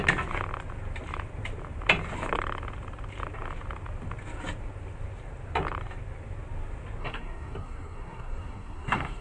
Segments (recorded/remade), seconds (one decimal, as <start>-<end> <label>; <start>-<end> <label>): 0.0-7.0 recorded; 7.0-9.2 remade

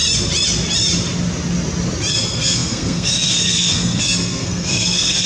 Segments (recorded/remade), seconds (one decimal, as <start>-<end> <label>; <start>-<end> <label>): 0.0-2.1 recorded; 2.1-5.3 remade

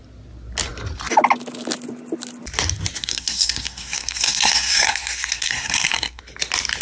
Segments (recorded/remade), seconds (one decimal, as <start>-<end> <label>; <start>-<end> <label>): 0.0-3.0 recorded; 3.0-6.2 remade; 6.2-6.8 recorded